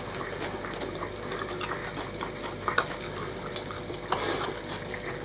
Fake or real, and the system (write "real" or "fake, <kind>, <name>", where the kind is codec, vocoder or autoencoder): real